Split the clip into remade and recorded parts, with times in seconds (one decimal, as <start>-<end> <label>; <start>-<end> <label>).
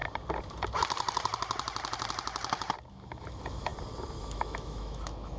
0.0-2.9 recorded; 2.9-3.7 remade; 3.7-4.2 recorded; 4.2-5.4 remade